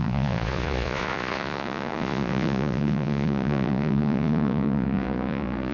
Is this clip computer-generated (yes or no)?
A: yes